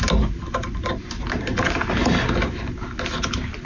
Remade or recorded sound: recorded